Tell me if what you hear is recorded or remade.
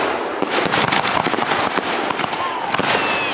recorded